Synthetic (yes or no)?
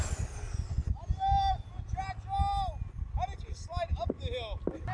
no